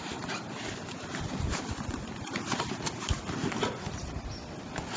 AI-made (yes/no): yes